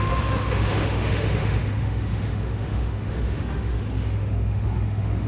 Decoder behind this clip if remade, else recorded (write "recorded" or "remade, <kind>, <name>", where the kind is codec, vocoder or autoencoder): remade, autoencoder, DAC-VAE